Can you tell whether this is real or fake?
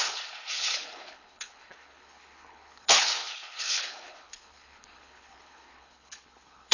fake